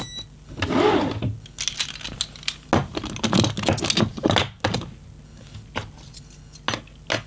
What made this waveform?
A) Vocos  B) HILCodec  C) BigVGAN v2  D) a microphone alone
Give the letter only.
D